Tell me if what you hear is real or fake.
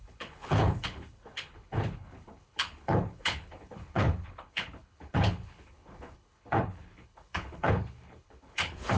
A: fake